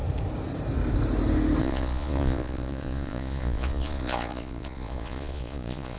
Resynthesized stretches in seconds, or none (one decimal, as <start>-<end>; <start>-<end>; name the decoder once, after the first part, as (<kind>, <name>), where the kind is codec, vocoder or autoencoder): 1.6-6.0 (vocoder, Vocos)